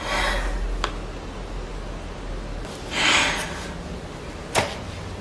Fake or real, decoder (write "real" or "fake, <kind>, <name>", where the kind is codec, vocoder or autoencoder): real